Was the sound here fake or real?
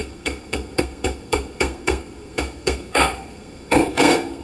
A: fake